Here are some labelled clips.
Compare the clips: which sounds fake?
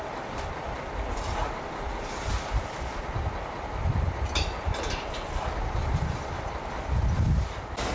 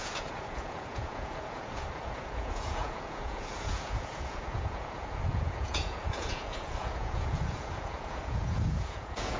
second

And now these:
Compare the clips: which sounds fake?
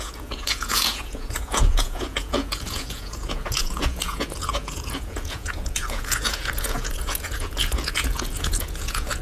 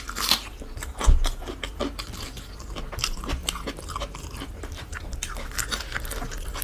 first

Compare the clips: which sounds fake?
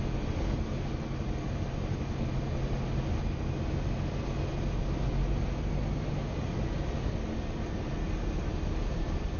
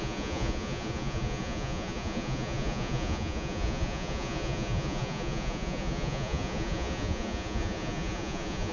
second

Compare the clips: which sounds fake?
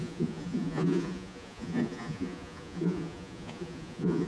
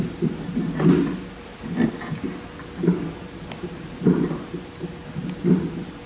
first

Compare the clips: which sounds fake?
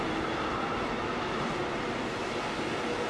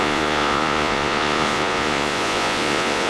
second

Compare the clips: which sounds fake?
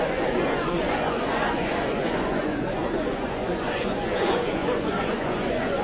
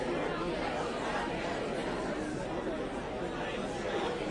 first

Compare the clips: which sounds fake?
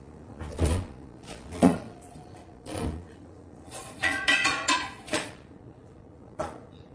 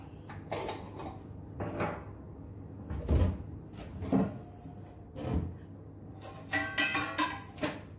first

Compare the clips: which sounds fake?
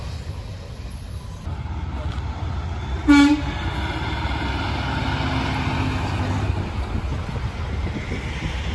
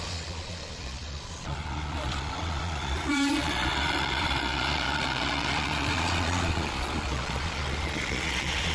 second